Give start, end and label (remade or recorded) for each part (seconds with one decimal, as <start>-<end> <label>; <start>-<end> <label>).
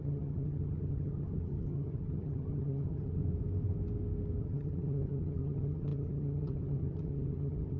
0.0-3.2 remade; 3.2-4.4 recorded; 4.4-7.8 remade